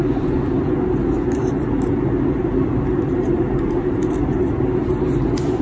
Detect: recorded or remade recorded